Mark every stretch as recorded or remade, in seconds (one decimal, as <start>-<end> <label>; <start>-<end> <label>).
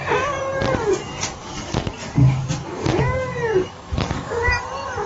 0.0-1.4 recorded; 1.4-4.5 remade; 4.5-5.1 recorded